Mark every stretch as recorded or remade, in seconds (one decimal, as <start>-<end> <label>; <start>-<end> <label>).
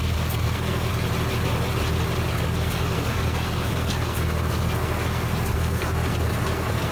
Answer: 0.0-0.9 remade; 0.9-2.3 recorded; 2.3-6.9 remade